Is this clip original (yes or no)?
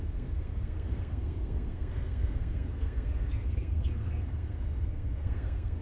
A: no